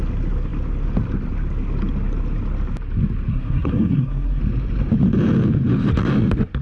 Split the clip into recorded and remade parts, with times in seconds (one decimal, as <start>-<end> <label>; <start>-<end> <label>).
0.0-3.3 recorded; 3.3-4.4 remade; 4.4-6.6 recorded

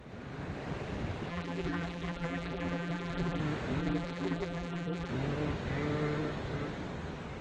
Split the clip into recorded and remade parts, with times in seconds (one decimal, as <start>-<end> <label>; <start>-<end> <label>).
0.0-1.3 recorded; 1.3-3.4 remade; 3.4-3.8 recorded; 3.8-5.1 remade; 5.1-7.4 recorded

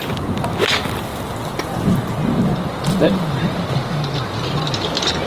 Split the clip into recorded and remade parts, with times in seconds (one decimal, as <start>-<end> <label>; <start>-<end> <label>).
0.0-5.3 recorded

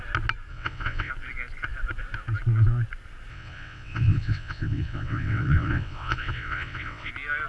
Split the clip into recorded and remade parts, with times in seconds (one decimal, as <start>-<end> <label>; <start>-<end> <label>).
0.0-0.5 recorded; 0.5-1.1 remade; 1.1-3.3 recorded; 3.3-7.1 remade; 7.1-7.5 recorded

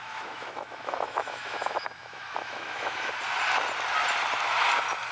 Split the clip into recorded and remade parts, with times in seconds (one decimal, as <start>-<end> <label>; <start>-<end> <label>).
0.0-3.1 remade; 3.1-5.1 recorded

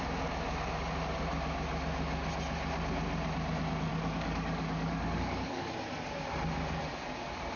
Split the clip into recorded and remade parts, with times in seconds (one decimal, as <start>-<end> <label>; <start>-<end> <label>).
0.0-3.9 recorded; 3.9-5.7 remade; 5.7-7.6 recorded